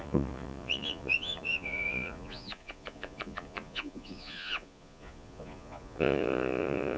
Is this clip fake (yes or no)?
yes